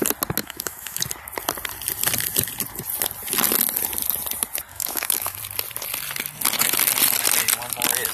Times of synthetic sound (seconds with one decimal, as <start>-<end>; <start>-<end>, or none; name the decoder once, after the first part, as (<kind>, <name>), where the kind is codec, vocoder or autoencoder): 0.4-1.0 (autoencoder, DAC-VAE); 4.7-5.4